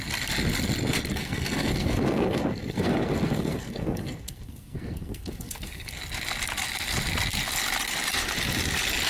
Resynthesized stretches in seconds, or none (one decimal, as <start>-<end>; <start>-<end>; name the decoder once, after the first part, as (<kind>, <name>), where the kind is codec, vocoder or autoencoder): 1.1-6.0 (codec, SNAC)